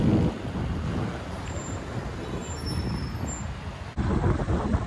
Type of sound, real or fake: real